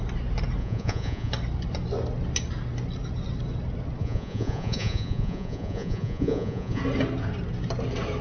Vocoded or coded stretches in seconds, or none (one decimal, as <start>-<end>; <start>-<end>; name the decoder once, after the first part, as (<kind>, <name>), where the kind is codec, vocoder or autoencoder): 0.6-1.3 (vocoder, Vocos); 4.0-6.8